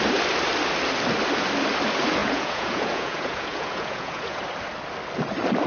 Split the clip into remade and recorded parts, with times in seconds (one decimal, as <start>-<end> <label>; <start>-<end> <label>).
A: 0.0-2.2 recorded; 2.2-4.4 remade; 4.4-5.7 recorded